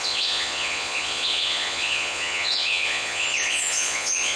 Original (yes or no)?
no